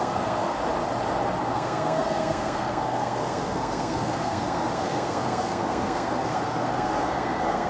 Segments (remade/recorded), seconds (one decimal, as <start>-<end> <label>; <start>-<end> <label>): 0.0-0.6 remade; 0.6-1.4 recorded; 1.4-7.7 remade